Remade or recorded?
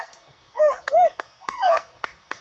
remade